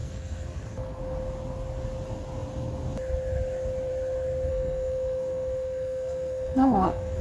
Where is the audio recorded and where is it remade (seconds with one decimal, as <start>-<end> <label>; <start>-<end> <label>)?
0.0-1.0 remade; 1.0-4.5 recorded; 4.5-7.2 remade